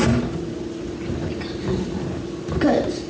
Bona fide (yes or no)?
yes